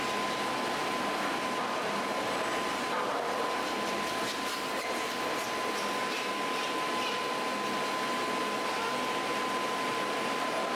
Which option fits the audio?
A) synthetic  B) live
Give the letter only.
B